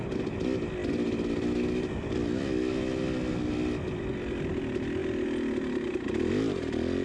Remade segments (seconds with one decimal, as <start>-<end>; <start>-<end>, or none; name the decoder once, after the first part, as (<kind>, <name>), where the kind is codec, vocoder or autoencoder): none